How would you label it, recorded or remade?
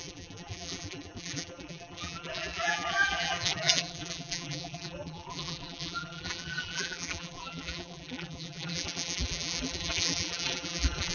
remade